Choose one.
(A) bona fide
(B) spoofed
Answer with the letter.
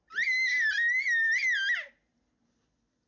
A